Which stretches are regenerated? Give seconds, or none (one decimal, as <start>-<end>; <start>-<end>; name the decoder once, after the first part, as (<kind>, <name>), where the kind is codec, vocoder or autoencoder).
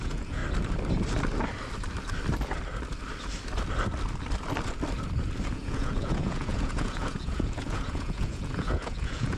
0.0-0.4 (vocoder, Vocos); 5.5-9.4